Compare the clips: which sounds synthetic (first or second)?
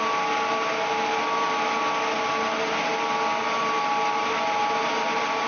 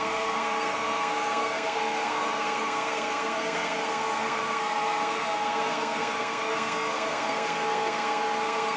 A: second